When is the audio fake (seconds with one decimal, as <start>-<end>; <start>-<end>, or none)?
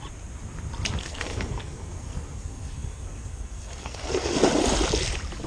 1.0-4.3